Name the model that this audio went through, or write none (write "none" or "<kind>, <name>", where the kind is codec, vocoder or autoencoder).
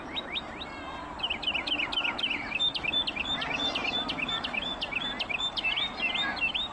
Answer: none